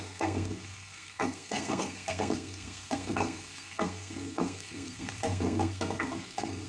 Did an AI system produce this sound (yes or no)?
yes